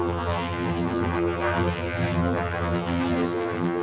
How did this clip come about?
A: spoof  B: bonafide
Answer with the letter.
A